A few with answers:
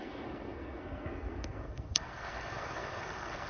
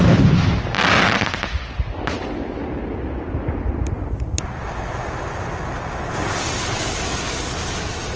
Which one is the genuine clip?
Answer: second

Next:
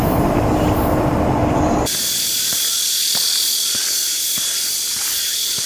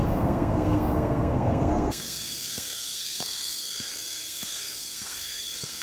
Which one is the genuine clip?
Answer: first